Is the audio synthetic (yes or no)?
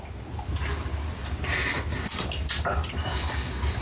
no